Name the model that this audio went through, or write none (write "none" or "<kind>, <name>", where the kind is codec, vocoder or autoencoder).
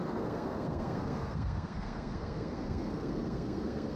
codec, SNAC